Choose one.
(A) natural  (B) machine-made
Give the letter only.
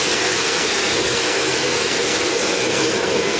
B